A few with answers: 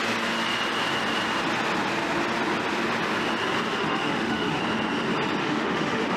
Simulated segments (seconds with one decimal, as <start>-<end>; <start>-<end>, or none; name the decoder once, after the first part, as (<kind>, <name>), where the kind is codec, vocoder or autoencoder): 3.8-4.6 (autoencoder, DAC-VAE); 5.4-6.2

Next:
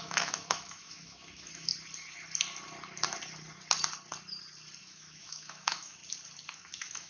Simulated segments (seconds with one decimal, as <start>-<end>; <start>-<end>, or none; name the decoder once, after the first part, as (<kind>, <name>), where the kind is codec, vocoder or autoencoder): 0.0-1.7 (autoencoder, DAC-VAE); 4.8-6.0; 6.5-7.1

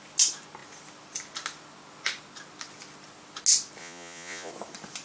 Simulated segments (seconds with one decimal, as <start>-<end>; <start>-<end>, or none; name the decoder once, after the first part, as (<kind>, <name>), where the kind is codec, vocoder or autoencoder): 3.8-4.5 (vocoder, Vocos)

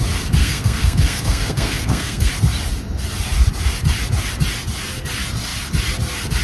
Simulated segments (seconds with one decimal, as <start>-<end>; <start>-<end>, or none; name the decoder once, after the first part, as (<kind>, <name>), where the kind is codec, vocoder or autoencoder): 0.4-2.3 (codec, SNAC)

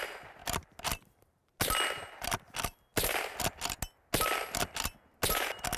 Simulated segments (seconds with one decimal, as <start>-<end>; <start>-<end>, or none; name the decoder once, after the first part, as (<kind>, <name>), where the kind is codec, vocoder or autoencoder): none